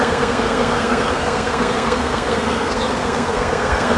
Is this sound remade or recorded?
remade